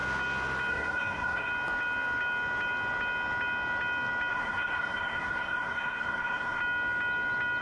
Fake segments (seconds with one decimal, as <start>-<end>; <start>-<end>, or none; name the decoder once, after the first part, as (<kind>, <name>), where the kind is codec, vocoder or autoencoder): 0.7-1.5 (codec, SNAC); 4.3-6.6